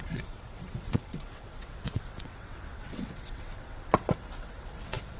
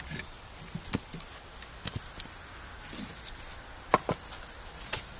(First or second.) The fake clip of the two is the first